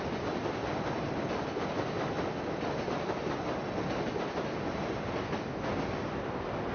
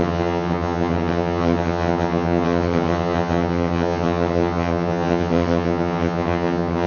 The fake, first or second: second